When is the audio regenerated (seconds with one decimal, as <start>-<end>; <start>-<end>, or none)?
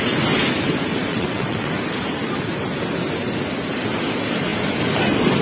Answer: 1.1-1.7